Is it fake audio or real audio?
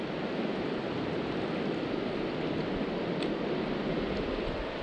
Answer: real